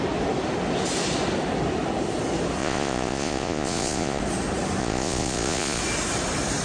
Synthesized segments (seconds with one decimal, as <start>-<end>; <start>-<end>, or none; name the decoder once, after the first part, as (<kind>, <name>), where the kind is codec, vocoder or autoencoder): 2.6-4.2 (vocoder, Vocos); 4.8-5.8

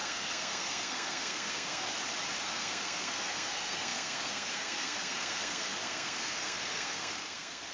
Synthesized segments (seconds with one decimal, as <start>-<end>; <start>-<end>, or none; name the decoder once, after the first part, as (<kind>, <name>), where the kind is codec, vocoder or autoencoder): 0.0-1.9 (codec, SNAC); 2.4-7.7

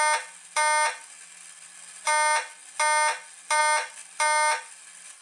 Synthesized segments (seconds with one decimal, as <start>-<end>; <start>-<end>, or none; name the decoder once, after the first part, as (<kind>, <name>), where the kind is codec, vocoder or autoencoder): none